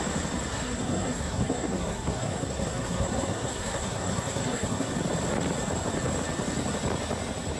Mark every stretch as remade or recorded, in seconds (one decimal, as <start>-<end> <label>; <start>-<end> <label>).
0.0-0.5 recorded; 0.5-4.9 remade; 4.9-7.6 recorded